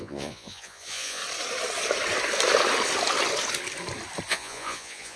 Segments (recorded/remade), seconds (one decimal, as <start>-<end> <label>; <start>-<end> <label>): 0.0-1.2 remade; 1.2-4.3 recorded; 4.3-5.2 remade